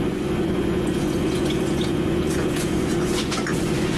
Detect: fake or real fake